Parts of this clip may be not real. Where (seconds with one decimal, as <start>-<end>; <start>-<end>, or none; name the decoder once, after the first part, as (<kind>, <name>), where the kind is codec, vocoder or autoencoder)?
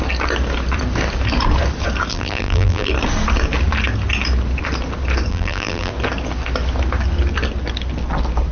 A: 2.1-2.9 (vocoder, BigVGAN v2); 5.3-5.9